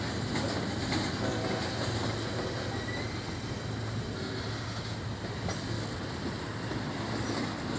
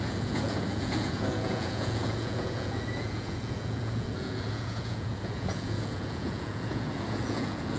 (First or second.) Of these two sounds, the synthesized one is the second